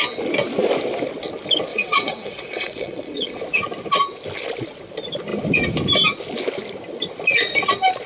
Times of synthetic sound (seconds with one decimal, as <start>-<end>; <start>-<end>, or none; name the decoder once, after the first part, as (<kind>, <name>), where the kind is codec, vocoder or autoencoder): 1.7-3.4 (vocoder, WaveNeXt)